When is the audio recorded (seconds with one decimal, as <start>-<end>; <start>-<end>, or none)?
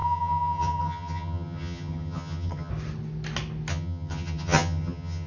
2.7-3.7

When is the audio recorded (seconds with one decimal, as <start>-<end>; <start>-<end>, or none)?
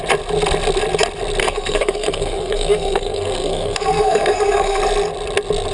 0.0-1.4; 4.8-5.7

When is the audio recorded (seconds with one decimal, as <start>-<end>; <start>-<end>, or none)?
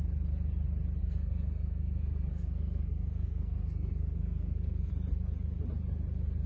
0.0-1.0; 4.9-6.5